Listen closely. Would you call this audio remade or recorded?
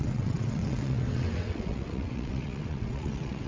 remade